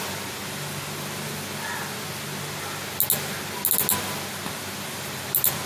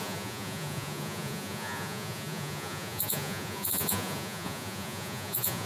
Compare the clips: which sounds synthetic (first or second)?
second